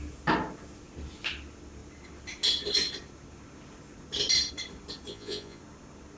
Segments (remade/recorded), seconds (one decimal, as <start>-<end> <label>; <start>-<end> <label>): 0.0-5.1 recorded; 5.1-5.6 remade; 5.6-6.2 recorded